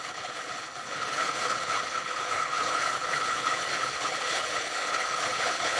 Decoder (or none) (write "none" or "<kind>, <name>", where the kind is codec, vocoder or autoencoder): codec, HILCodec